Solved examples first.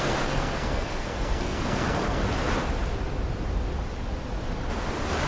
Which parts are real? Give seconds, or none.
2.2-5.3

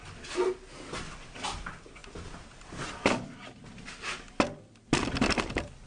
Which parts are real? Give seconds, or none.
0.0-5.9

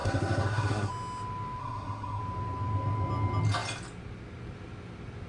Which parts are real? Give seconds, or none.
0.9-1.6; 2.2-5.3

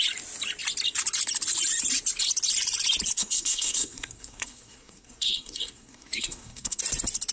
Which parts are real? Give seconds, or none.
0.0-3.2; 6.8-7.3